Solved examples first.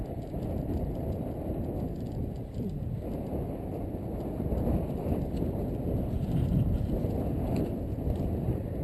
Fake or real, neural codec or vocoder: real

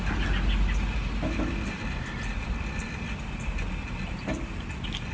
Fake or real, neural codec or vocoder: real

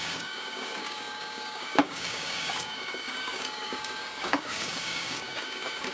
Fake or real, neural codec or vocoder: fake, codec, DAC